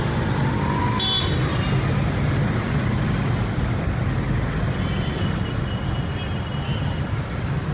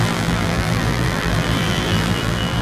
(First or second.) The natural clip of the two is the first